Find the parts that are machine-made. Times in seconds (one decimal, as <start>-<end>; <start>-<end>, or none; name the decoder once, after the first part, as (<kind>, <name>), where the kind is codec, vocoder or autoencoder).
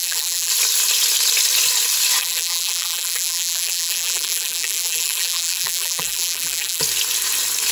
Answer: 0.0-0.5 (vocoder, BigVGAN v2); 2.2-6.8